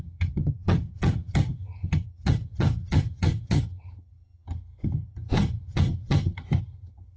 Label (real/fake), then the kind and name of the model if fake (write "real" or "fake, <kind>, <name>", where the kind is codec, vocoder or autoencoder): fake, vocoder, HiFi-GAN